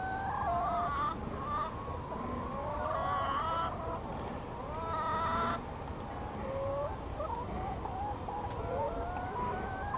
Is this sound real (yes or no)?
yes